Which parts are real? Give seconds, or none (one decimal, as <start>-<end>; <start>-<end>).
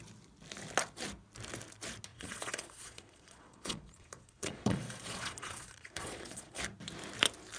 0.0-2.1; 6.6-7.6